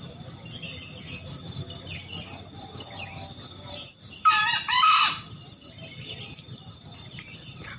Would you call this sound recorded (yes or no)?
yes